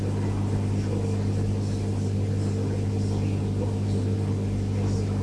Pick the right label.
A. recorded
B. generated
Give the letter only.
A